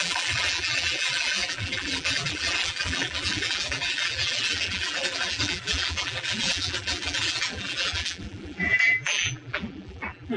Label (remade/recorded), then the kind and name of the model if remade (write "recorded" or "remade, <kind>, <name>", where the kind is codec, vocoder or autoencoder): remade, vocoder, BigVGAN v2